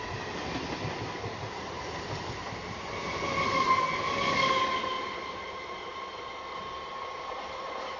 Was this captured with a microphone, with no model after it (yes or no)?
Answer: yes